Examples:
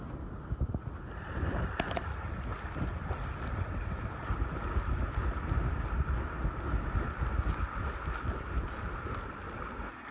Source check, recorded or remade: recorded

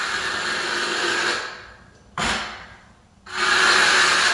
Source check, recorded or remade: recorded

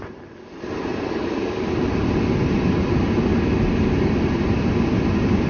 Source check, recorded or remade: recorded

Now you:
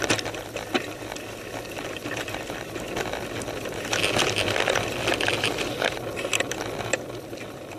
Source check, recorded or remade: recorded